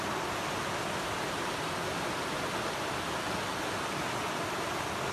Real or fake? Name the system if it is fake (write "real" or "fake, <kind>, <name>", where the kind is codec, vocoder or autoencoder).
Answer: real